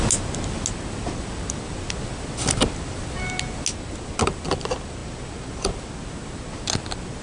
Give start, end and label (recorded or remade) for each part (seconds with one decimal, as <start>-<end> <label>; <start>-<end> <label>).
0.0-7.2 recorded